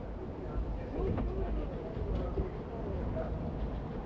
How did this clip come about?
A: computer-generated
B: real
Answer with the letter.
B